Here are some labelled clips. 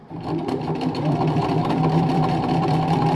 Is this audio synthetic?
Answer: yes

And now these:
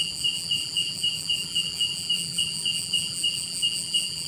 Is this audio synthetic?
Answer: yes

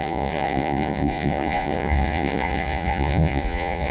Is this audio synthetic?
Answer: yes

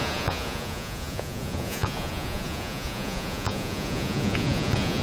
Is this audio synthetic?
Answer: yes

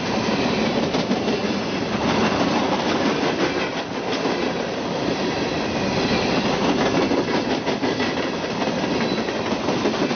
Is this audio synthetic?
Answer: no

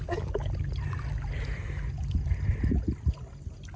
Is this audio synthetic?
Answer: no